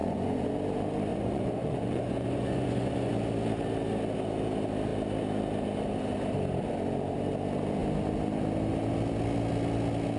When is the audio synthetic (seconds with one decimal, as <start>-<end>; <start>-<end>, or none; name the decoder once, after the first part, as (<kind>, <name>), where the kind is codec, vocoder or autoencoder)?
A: 0.0-0.5 (vocoder, Vocos); 1.1-3.1